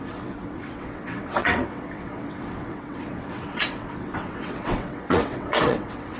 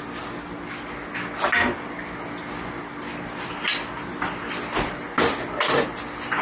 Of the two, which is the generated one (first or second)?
first